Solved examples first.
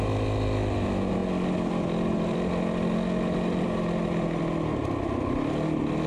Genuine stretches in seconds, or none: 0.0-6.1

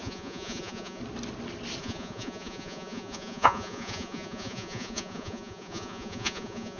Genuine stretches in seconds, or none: 1.0-1.8

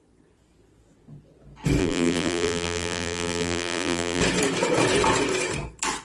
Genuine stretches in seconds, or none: 0.0-1.8; 4.2-6.0

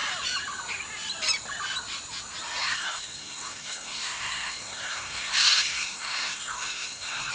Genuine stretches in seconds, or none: 0.0-2.6

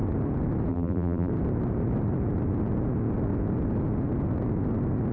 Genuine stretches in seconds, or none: 0.0-0.7; 1.3-5.1

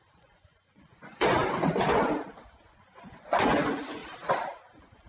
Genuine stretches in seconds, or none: 4.0-5.1